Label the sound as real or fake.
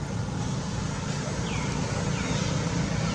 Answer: real